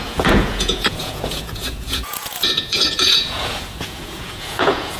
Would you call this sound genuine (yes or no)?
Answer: no